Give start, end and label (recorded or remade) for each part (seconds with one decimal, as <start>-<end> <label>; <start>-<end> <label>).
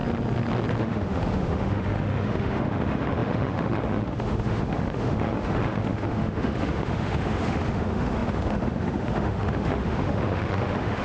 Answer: 0.0-0.8 recorded; 0.8-11.0 remade